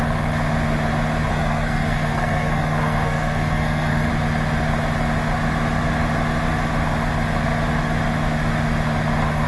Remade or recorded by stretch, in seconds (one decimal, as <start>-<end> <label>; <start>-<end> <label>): 0.0-1.3 recorded; 1.3-4.1 remade; 4.1-9.5 recorded